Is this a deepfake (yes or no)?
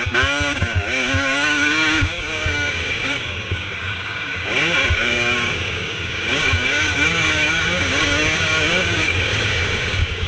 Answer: yes